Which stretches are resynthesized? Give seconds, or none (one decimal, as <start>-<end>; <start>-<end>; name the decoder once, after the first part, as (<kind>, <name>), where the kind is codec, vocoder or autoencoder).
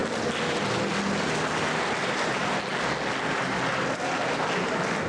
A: none